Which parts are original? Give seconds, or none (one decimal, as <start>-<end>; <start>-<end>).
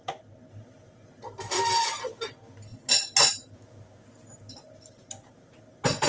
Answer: 0.0-6.1